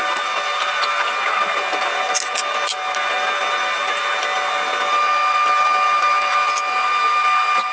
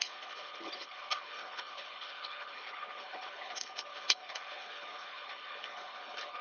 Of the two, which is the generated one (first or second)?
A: second